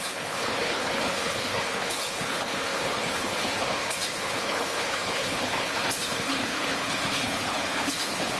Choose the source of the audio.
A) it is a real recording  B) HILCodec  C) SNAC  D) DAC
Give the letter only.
B